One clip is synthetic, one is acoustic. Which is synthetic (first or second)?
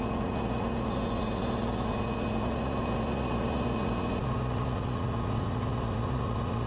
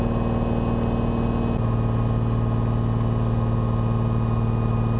first